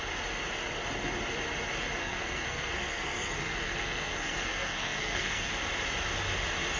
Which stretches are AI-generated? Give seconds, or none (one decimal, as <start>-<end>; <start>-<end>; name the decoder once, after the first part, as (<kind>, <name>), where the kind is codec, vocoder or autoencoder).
2.0-5.5 (codec, SNAC)